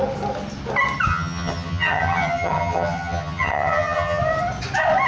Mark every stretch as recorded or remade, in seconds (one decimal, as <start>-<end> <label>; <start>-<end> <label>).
0.0-1.1 recorded; 1.1-4.2 remade; 4.2-5.1 recorded